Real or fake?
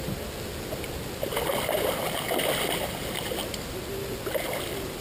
real